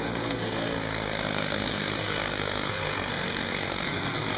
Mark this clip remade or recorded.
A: remade